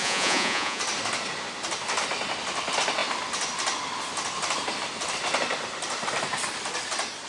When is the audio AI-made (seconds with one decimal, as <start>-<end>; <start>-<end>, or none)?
0.0-0.8